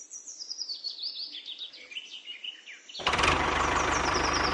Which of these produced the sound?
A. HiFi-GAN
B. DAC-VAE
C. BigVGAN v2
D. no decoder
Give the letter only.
C